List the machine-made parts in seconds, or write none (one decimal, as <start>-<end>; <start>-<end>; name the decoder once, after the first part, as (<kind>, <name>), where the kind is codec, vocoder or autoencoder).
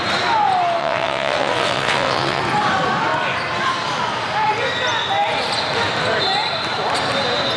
0.8-2.4 (vocoder, WaveNeXt)